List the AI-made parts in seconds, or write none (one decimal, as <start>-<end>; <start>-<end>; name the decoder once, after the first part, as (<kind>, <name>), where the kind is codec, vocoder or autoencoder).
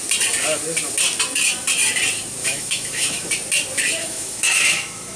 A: 2.4-3.3 (autoencoder, DAC-VAE); 4.0-5.2